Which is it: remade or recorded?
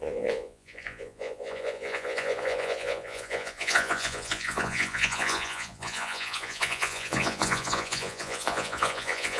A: remade